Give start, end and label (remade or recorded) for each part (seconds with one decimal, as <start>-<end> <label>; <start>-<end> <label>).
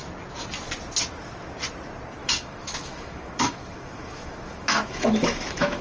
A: 0.0-2.2 recorded; 2.2-5.8 remade